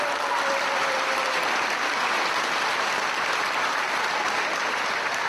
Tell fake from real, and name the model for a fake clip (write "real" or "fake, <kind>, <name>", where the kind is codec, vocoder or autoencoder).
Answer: fake, vocoder, BigVGAN v2